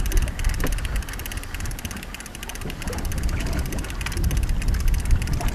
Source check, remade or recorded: recorded